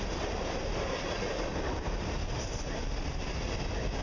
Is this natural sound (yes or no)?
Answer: yes